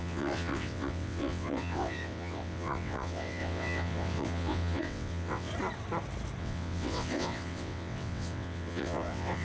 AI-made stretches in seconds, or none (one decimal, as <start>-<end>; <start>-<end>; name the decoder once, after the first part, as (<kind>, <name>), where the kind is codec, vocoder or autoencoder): 0.0-5.5 (vocoder, WaveNeXt); 6.4-9.4